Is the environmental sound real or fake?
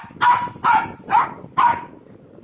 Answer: real